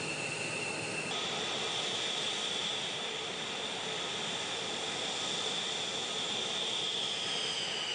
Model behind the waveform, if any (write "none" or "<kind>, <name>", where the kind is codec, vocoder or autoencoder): none